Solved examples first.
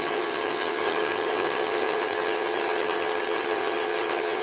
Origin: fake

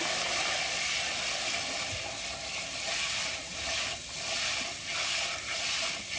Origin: real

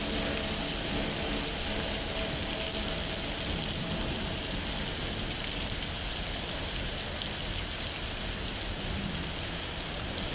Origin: real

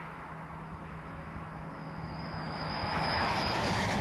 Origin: fake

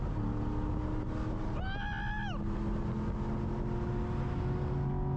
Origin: real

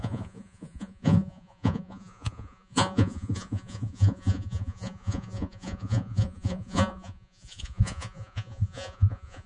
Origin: fake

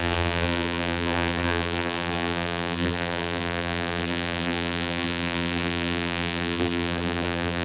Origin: fake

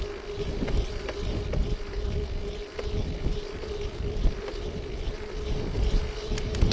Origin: real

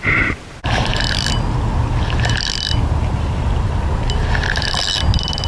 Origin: real